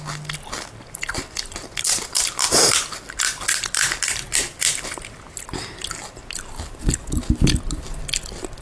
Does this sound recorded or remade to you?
recorded